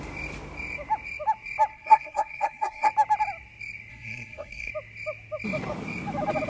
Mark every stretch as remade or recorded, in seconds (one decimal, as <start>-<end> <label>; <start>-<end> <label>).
0.0-1.7 recorded; 1.7-2.9 remade; 2.9-3.9 recorded; 3.9-4.7 remade; 4.7-6.5 recorded